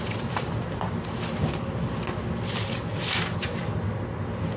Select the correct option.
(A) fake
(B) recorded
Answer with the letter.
B